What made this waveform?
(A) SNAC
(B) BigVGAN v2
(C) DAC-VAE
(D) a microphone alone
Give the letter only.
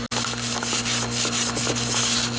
D